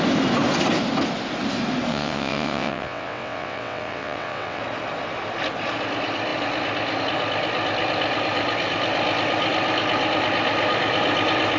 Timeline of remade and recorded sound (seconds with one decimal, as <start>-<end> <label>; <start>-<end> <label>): 0.0-1.9 recorded; 1.9-4.6 remade; 4.6-11.6 recorded